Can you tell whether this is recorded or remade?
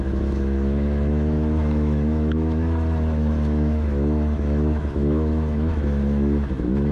remade